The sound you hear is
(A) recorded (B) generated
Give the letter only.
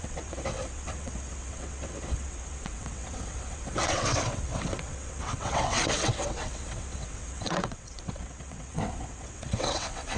B